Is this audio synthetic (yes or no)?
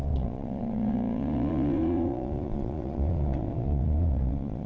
yes